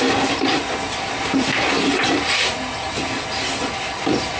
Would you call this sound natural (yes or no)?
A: yes